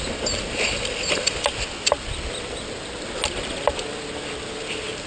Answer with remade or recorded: recorded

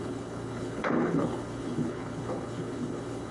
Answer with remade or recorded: remade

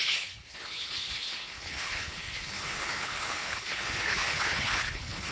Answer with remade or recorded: remade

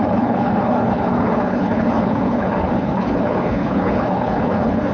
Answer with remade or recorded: remade